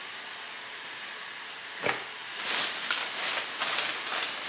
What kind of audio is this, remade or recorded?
recorded